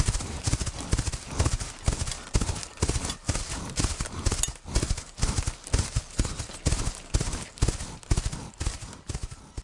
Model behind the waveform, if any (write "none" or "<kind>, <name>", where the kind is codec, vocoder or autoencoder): none